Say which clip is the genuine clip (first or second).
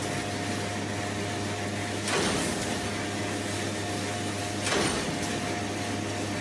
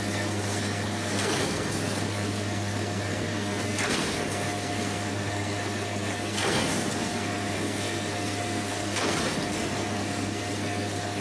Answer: first